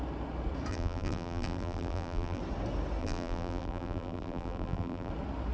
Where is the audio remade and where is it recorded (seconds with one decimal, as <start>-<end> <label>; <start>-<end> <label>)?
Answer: 0.0-0.7 recorded; 0.7-2.4 remade; 2.4-3.0 recorded; 3.0-5.1 remade; 5.1-5.5 recorded